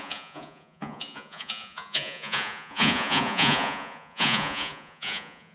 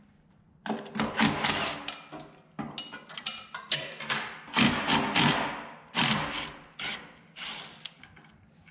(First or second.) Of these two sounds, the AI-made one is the first